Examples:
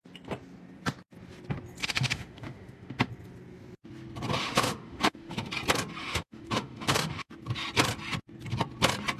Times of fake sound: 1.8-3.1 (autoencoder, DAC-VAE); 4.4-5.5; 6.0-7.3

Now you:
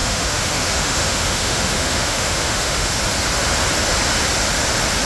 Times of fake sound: 0.0-3.0 (autoencoder, DAC-VAE)

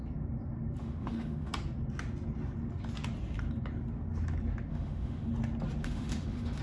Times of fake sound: 0.8-1.5 (autoencoder, DAC-VAE); 4.7-5.3; 5.8-6.6